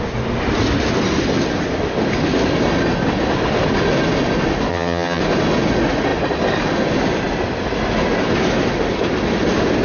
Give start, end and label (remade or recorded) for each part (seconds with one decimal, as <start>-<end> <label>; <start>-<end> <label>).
0.0-4.7 recorded; 4.7-5.2 remade; 5.2-9.8 recorded